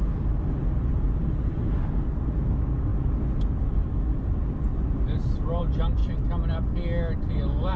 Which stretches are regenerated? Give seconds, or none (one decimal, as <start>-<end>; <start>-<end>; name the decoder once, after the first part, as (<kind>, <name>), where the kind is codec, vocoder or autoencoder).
0.9-1.5 (vocoder, BigVGAN v2); 4.7-5.6